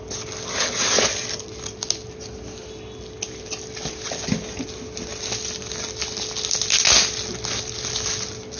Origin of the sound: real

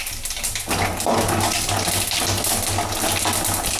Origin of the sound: real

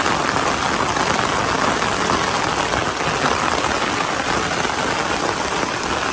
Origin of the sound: real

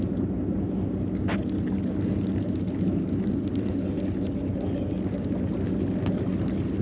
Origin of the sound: real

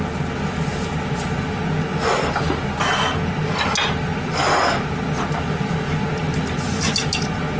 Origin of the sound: real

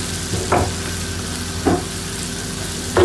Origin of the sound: real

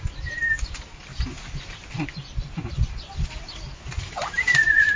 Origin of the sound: real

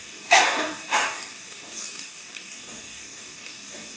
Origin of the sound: fake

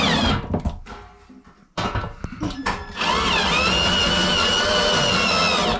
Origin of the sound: real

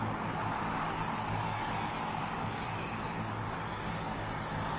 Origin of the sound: fake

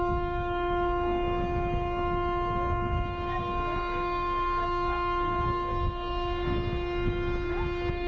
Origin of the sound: fake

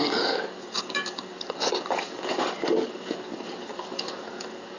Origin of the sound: fake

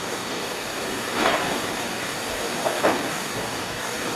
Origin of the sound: fake